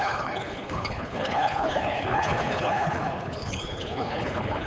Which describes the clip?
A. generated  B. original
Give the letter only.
A